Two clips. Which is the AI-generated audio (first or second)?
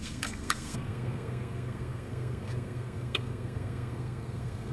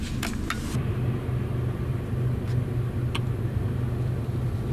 first